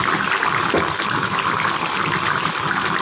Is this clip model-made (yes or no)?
no